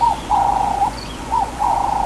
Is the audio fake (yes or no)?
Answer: yes